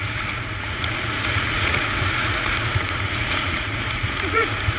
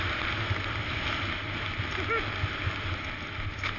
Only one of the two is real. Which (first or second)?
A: second